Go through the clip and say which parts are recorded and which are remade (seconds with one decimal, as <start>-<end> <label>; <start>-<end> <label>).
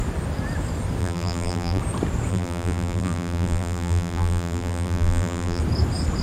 0.0-1.0 recorded; 1.0-1.8 remade; 1.8-2.3 recorded; 2.3-5.6 remade; 5.6-6.2 recorded